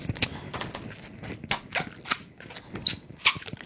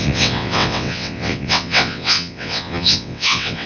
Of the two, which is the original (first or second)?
first